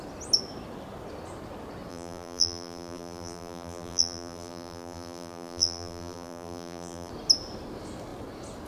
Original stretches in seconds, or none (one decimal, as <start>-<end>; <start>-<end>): 0.0-1.9; 7.1-8.7